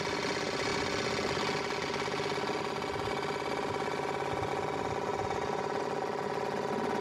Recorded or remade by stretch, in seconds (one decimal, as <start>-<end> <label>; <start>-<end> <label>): 0.0-5.1 recorded; 5.1-5.8 remade; 5.8-7.0 recorded